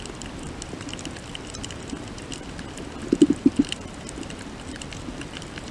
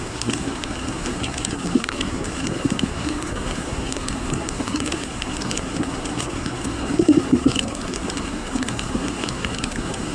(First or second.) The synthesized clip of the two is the second